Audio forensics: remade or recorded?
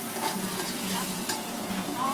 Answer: remade